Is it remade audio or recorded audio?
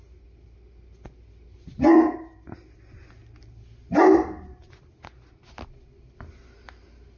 recorded